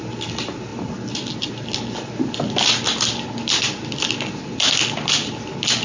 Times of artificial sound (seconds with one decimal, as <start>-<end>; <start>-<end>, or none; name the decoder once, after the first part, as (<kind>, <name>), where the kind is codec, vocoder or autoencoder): none